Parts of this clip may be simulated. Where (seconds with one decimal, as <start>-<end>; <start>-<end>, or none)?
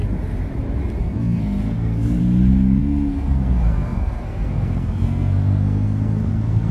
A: 1.0-2.2; 2.8-6.7